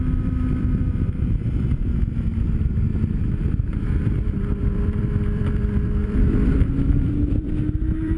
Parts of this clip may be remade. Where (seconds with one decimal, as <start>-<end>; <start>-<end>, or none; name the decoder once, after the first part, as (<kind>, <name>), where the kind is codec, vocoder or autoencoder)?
0.0-8.2 (vocoder, BigVGAN v2)